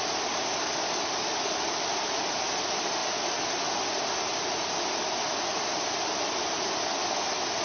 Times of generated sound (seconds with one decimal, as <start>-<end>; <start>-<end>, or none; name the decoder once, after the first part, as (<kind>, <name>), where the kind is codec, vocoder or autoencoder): none